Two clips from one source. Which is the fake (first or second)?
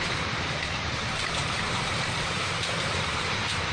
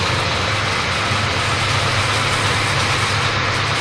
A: first